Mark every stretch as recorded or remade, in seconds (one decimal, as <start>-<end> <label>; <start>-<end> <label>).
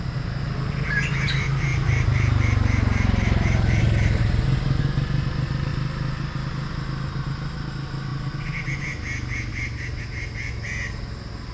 0.0-1.7 recorded; 1.7-4.8 remade; 4.8-9.5 recorded; 9.5-10.0 remade; 10.0-11.5 recorded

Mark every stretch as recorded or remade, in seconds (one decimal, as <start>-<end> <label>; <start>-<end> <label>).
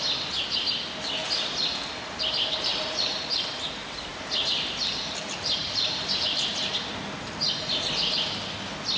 0.0-2.7 recorded; 2.7-3.3 remade; 3.3-4.1 recorded; 4.1-6.7 remade; 6.7-9.0 recorded